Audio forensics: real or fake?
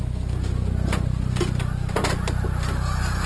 real